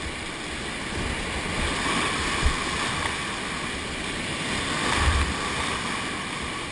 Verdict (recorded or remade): recorded